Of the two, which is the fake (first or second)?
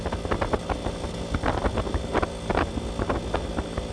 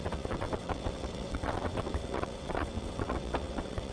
second